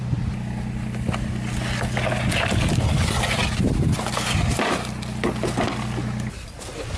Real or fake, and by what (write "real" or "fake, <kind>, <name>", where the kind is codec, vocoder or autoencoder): real